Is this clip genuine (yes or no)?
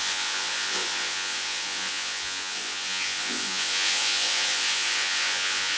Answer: no